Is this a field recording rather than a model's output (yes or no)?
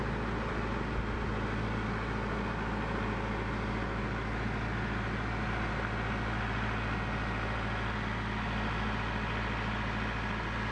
yes